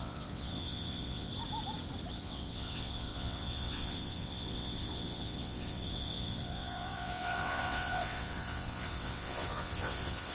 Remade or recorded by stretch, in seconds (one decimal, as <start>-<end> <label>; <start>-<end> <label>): 0.0-1.3 remade; 1.3-2.1 recorded; 2.1-10.3 remade